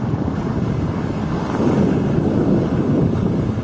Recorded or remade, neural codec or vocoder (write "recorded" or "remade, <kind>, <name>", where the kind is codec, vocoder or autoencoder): remade, codec, DAC